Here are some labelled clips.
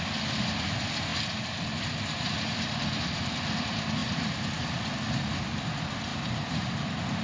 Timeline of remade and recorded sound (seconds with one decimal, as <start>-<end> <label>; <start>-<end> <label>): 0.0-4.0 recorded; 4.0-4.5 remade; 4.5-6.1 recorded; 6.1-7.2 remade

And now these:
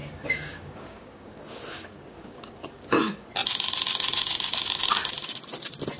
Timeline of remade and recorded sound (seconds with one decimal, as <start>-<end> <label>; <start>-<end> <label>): 0.0-2.9 remade; 2.9-6.0 recorded

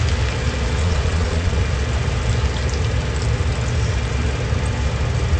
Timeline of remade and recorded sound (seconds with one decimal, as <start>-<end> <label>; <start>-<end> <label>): 0.0-0.8 recorded; 0.8-1.6 remade; 1.6-5.4 recorded

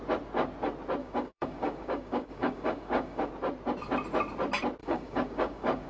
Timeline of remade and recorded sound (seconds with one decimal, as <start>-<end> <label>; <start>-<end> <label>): 0.0-1.0 recorded; 1.0-3.3 remade; 3.3-4.8 recorded; 4.8-5.9 remade

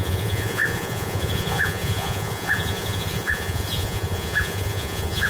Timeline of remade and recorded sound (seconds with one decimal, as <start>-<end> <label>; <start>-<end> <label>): 0.0-5.3 remade

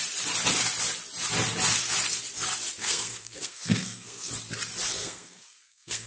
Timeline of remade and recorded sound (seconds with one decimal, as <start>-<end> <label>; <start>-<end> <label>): 0.0-2.8 recorded; 2.8-4.3 remade; 4.3-5.0 recorded; 5.0-6.1 remade